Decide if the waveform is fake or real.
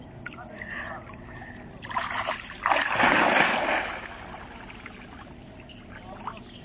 real